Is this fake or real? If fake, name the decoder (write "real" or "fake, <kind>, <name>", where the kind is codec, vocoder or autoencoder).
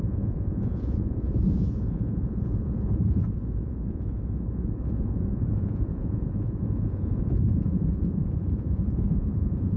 fake, vocoder, Vocos